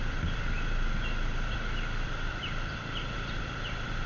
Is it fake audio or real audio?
fake